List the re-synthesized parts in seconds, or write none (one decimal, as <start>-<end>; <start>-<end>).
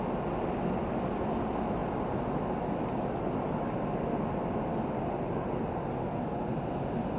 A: none